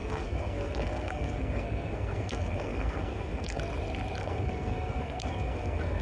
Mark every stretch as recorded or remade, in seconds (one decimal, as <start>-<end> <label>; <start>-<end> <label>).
0.0-3.6 remade; 3.6-4.2 recorded; 4.2-6.0 remade